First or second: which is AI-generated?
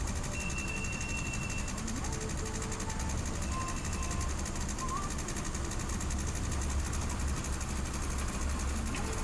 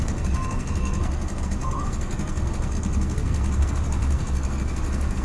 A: second